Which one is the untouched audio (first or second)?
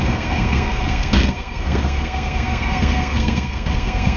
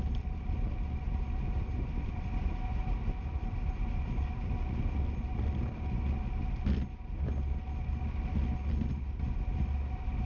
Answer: second